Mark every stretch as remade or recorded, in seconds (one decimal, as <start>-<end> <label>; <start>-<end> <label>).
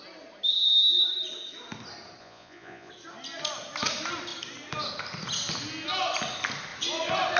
0.0-2.2 recorded; 2.2-2.9 remade; 2.9-7.4 recorded